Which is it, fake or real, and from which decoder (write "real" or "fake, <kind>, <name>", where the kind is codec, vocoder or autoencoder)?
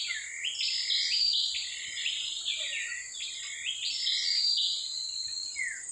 real